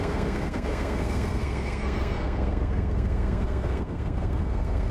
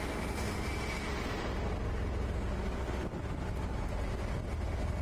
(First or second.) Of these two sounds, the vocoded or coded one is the first